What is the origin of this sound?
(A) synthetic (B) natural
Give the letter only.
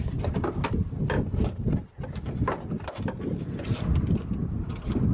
B